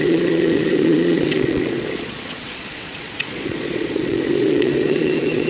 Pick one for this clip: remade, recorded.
remade